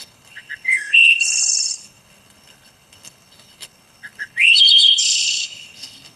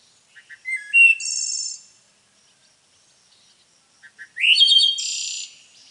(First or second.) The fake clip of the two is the first